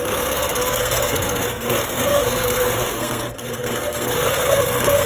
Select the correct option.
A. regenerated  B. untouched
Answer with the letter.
A